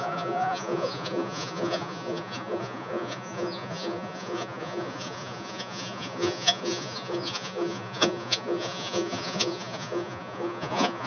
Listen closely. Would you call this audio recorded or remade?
remade